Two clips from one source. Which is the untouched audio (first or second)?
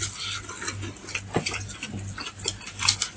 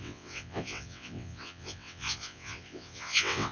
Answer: first